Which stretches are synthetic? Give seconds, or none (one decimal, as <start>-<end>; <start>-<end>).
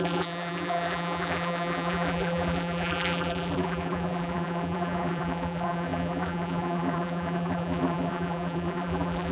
0.0-9.3